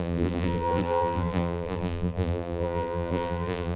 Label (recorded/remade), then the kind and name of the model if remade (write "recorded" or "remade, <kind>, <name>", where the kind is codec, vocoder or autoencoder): remade, vocoder, BigVGAN v2